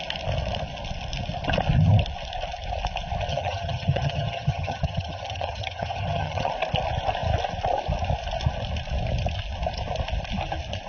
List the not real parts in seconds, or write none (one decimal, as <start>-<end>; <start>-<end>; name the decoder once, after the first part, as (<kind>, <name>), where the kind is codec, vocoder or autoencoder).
3.3-6.5 (vocoder, HiFi-GAN)